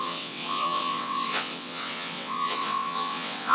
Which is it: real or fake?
fake